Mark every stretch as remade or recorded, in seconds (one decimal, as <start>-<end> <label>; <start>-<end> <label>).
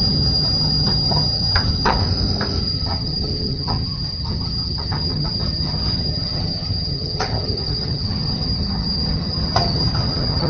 0.0-2.0 remade; 2.0-2.6 recorded; 2.6-10.5 remade